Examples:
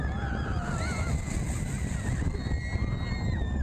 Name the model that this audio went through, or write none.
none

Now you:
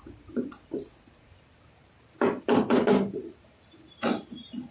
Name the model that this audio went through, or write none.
vocoder, BigVGAN v2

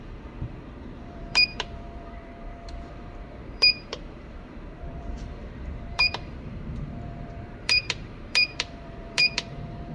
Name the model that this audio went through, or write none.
vocoder, BigVGAN v2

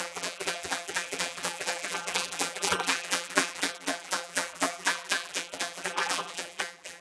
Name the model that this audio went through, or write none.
vocoder, BigVGAN v2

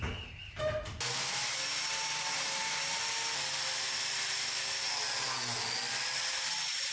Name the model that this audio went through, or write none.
none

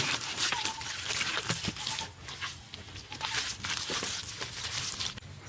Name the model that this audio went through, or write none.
none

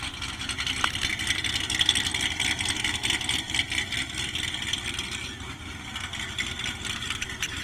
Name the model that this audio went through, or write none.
none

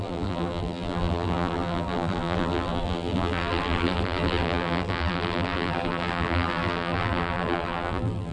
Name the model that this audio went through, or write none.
vocoder, BigVGAN v2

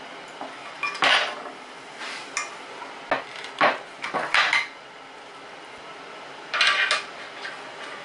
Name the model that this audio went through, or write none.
none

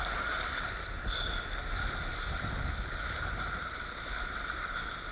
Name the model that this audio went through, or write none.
none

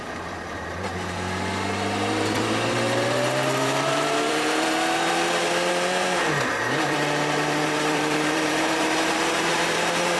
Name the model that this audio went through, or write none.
vocoder, BigVGAN v2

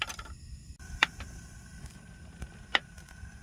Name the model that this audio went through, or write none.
none